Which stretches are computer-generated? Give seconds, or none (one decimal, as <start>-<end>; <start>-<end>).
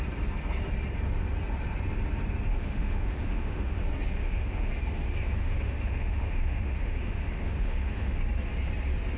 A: 2.5-3.8; 4.2-4.7; 5.4-8.2